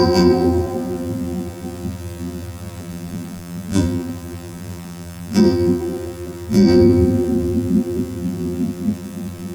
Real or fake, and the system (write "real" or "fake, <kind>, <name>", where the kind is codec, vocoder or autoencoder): fake, vocoder, BigVGAN v2